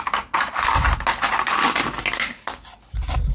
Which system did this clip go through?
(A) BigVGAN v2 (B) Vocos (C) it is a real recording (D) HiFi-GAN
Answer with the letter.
C